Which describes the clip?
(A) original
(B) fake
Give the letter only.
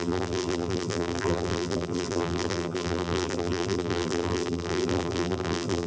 B